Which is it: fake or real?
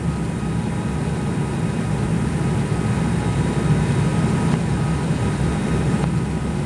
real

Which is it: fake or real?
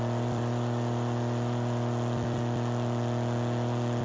real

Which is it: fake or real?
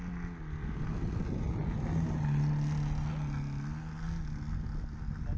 real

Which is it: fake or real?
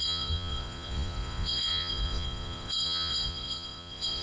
fake